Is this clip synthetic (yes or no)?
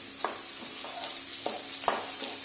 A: no